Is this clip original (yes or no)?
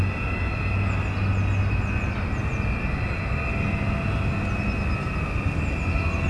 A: yes